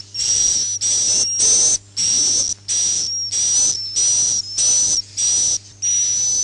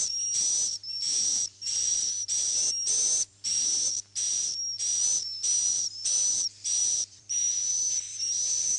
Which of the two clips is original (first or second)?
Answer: first